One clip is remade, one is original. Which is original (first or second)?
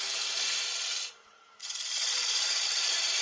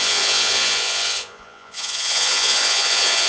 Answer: first